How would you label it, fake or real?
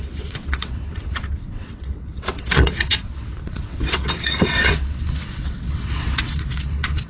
fake